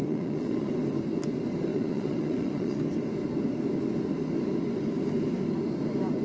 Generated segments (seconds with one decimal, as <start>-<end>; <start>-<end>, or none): 0.0-0.7; 1.7-2.8